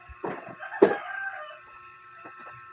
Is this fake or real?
real